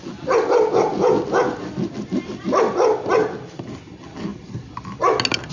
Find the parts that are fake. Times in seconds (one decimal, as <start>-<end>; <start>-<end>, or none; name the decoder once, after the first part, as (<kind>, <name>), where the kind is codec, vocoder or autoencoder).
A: none